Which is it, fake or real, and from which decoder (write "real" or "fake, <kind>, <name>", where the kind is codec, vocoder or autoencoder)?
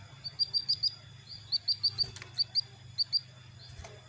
real